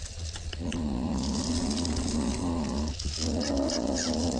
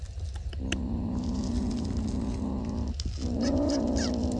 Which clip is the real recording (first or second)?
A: second